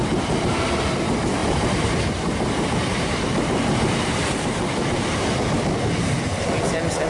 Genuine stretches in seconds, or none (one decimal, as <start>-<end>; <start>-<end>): 0.0-1.4; 5.2-7.1